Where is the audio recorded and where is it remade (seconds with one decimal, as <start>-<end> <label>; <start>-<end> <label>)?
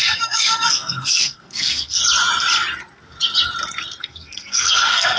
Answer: 0.0-2.0 remade; 2.0-4.0 recorded; 4.0-5.2 remade